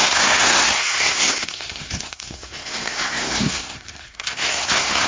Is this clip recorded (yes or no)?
no